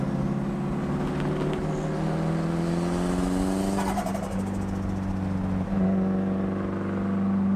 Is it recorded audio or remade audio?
recorded